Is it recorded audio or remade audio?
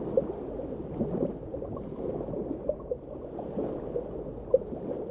recorded